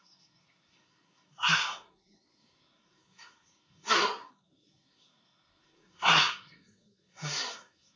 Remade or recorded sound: remade